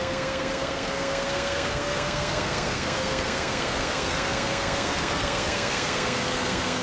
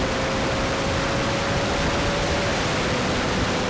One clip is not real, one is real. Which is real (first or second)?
second